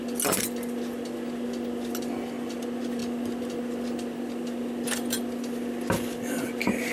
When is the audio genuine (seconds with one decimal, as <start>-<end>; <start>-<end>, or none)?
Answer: 0.0-6.9